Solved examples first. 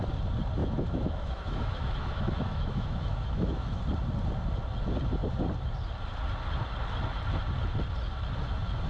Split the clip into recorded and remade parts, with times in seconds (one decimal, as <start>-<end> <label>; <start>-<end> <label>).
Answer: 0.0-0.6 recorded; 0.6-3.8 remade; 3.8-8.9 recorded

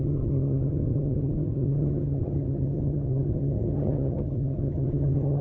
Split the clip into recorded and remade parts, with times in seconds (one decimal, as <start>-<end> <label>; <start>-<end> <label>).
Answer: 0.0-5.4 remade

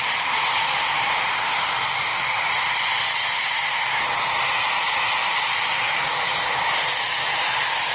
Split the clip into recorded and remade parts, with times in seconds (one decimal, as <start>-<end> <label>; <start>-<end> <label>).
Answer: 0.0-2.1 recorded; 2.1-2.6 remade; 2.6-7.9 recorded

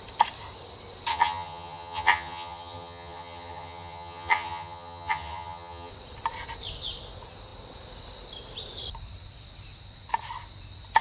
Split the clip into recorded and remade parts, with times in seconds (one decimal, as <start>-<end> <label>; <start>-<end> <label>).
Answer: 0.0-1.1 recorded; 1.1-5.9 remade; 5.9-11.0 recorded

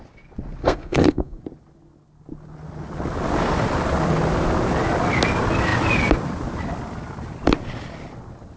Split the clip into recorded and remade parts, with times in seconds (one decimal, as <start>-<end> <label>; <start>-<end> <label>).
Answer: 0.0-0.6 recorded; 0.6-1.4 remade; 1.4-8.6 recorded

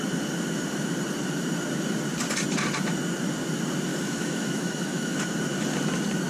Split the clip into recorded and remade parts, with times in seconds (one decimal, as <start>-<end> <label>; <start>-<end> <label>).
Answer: 0.0-3.9 recorded; 3.9-5.2 remade; 5.2-6.3 recorded

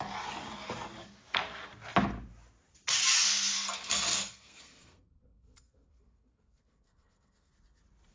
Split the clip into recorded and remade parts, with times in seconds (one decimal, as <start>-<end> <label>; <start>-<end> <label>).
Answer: 0.0-3.2 recorded; 3.2-7.5 remade; 7.5-8.1 recorded